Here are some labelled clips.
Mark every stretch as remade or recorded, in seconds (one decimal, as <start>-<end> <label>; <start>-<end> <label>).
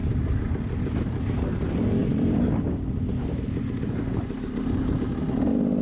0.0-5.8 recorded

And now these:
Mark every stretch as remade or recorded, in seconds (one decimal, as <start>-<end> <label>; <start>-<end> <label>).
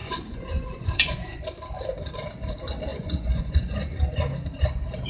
0.0-1.4 remade; 1.4-2.9 recorded; 2.9-4.0 remade; 4.0-5.1 recorded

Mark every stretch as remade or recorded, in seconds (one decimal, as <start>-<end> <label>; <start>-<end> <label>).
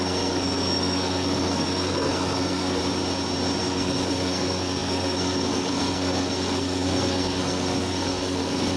0.0-2.8 remade; 2.8-3.6 recorded; 3.6-8.8 remade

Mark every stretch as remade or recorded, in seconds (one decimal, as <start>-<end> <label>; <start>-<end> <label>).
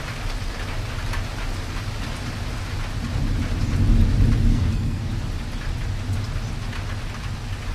0.0-4.5 recorded; 4.5-5.1 remade; 5.1-7.7 recorded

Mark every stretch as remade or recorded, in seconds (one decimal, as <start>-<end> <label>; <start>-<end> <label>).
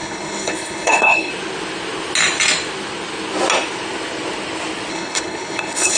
0.0-1.3 remade; 1.3-4.9 recorded; 4.9-6.0 remade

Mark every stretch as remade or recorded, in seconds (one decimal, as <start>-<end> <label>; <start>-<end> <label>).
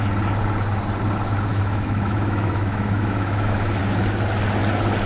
0.0-1.5 recorded; 1.5-3.8 remade; 3.8-5.1 recorded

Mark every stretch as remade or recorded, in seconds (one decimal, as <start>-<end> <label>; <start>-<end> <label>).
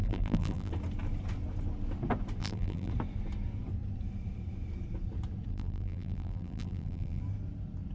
0.0-0.7 remade; 0.7-2.4 recorded; 2.4-2.9 remade; 2.9-5.5 recorded; 5.5-7.2 remade; 7.2-7.9 recorded